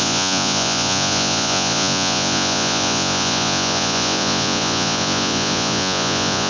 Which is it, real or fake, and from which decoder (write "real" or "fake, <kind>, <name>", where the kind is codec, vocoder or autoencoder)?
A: fake, vocoder, Vocos